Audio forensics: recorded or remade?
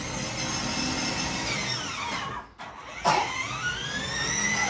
recorded